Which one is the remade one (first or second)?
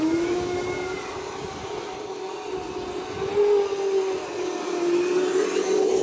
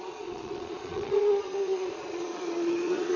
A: second